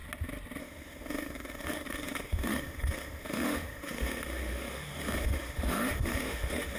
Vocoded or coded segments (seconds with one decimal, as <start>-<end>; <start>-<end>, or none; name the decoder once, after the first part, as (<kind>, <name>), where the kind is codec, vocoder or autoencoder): 0.6-6.8 (autoencoder, DAC-VAE)